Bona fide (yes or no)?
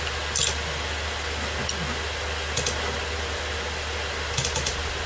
yes